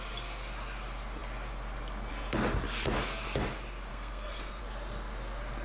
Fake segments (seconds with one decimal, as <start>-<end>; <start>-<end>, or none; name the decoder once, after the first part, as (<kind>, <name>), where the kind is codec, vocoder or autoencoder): 3.9-4.6 (codec, SNAC)